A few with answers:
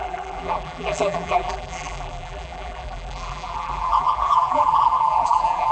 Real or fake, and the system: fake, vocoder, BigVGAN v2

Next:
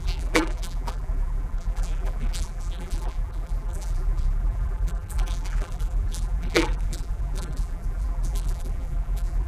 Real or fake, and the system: fake, vocoder, BigVGAN v2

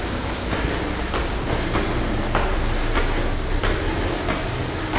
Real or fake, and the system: real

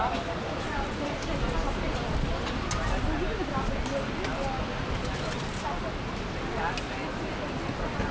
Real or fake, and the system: real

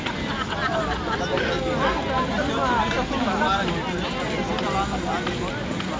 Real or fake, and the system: real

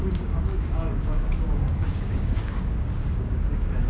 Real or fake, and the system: fake, codec, DAC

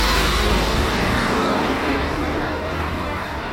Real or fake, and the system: fake, codec, DAC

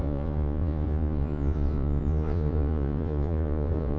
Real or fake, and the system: fake, vocoder, Vocos